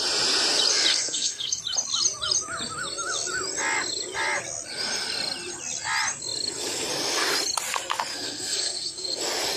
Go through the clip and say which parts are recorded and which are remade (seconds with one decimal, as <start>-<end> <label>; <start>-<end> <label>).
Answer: 0.0-0.9 recorded; 0.9-1.6 remade; 1.6-8.1 recorded; 8.1-9.2 remade; 9.2-9.6 recorded

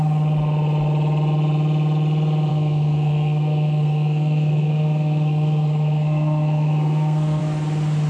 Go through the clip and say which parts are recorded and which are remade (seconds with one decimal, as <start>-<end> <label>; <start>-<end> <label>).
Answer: 0.0-2.5 recorded; 2.5-7.4 remade; 7.4-8.1 recorded

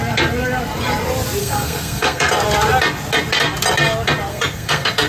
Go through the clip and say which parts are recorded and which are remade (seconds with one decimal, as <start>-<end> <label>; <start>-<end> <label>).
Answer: 0.0-1.4 recorded; 1.4-2.3 remade; 2.3-4.3 recorded; 4.3-5.1 remade

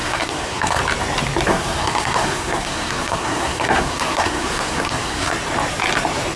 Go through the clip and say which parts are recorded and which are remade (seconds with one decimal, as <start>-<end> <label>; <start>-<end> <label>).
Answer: 0.0-0.8 remade; 0.8-1.5 recorded; 1.5-5.3 remade; 5.3-6.4 recorded

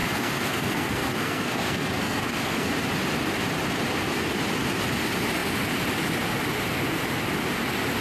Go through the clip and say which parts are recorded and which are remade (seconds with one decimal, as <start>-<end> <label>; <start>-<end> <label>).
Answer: 0.0-2.7 remade; 2.7-8.0 recorded

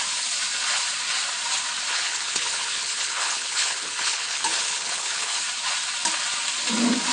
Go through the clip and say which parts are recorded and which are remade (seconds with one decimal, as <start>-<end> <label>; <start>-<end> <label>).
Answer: 0.0-1.9 recorded; 1.9-5.4 remade; 5.4-7.1 recorded